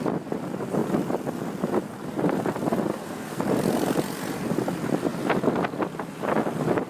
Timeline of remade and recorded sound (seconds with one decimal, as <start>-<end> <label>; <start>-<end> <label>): 0.0-2.9 recorded; 2.9-3.4 remade; 3.4-6.9 recorded